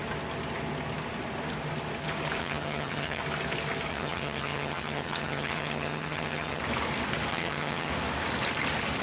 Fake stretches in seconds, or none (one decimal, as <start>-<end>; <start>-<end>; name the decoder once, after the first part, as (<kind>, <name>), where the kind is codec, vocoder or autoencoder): 2.4-3.2 (vocoder, HiFi-GAN); 3.9-6.6; 7.3-7.9